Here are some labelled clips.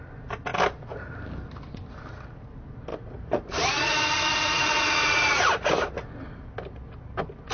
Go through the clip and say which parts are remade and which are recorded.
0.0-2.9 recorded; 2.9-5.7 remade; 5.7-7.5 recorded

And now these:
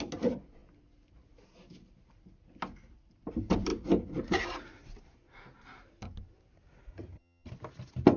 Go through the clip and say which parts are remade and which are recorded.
0.0-6.9 recorded; 6.9-7.5 remade; 7.5-8.2 recorded

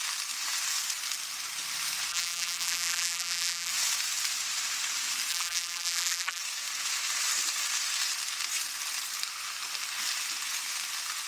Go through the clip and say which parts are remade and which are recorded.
0.0-2.1 recorded; 2.1-3.7 remade; 3.7-5.3 recorded; 5.3-6.4 remade; 6.4-11.3 recorded

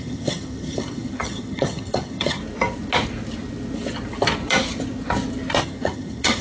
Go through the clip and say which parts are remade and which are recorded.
0.0-2.4 remade; 2.4-5.6 recorded; 5.6-6.4 remade

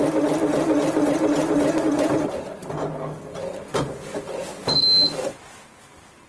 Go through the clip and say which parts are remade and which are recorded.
0.0-6.3 recorded

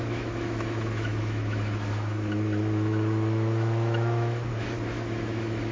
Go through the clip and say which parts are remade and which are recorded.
0.0-5.7 remade

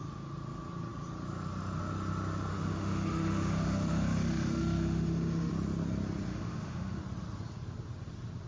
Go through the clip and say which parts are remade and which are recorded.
0.0-2.5 recorded; 2.5-5.5 remade; 5.5-6.3 recorded; 6.3-7.0 remade; 7.0-8.5 recorded